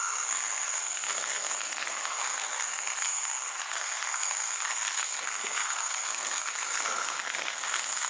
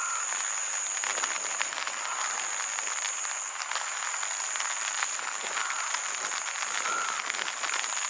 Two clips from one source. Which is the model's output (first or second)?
first